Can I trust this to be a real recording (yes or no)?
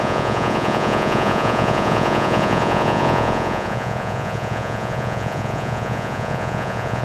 no